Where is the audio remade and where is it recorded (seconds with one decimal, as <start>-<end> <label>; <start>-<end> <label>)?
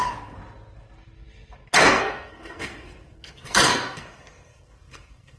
0.0-0.4 remade; 0.4-1.8 recorded; 1.8-5.4 remade